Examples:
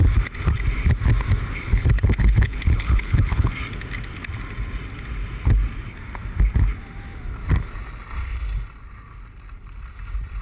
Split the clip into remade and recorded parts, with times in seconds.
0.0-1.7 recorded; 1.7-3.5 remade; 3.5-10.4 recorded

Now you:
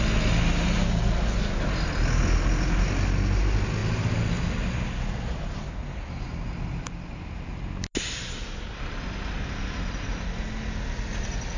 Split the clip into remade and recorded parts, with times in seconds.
0.0-11.6 recorded

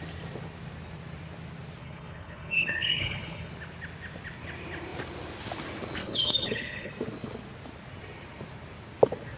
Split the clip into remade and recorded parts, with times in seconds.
0.0-1.8 recorded; 1.8-3.5 remade; 3.5-6.0 recorded; 6.0-6.9 remade; 6.9-9.4 recorded

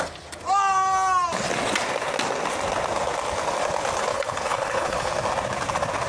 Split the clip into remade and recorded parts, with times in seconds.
0.0-4.1 recorded; 4.1-5.1 remade; 5.1-6.1 recorded

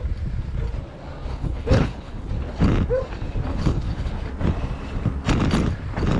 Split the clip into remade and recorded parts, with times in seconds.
0.0-1.3 recorded; 1.3-2.3 remade; 2.3-3.5 recorded; 3.5-4.1 remade; 4.1-6.2 recorded

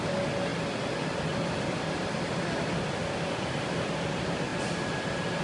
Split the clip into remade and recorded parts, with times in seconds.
0.0-5.4 recorded

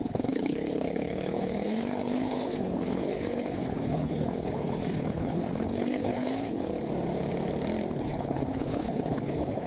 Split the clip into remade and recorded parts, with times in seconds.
0.0-6.7 remade; 6.7-8.0 recorded; 8.0-9.7 remade

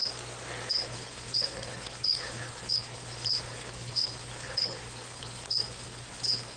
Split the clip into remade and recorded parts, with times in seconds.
0.0-0.7 recorded; 0.7-6.6 remade